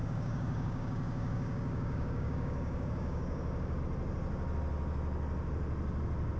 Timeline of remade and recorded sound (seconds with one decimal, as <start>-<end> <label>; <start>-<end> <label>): 0.0-3.8 remade; 3.8-6.4 recorded